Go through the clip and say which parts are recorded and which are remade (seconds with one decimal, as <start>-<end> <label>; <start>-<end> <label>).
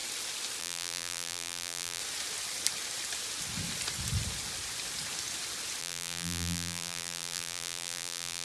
0.0-0.6 recorded; 0.6-2.0 remade; 2.0-5.8 recorded; 5.8-8.4 remade